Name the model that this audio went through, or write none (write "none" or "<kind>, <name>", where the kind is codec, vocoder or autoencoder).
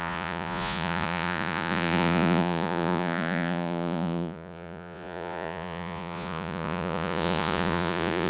vocoder, Vocos